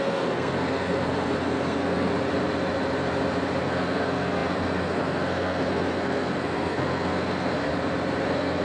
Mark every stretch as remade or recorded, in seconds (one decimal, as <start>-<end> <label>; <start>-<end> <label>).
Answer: 0.0-2.1 remade; 2.1-3.6 recorded; 3.6-7.7 remade; 7.7-8.2 recorded; 8.2-8.6 remade